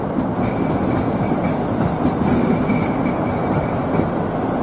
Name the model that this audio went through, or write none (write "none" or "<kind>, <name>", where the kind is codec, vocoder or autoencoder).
none